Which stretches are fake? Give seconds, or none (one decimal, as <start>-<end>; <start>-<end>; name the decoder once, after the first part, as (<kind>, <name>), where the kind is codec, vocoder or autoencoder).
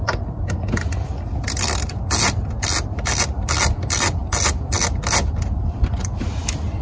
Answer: none